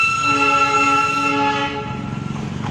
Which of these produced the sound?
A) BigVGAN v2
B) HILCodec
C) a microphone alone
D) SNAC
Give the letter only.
C